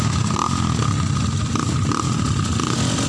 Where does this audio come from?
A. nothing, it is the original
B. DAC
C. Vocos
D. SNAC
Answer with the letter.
A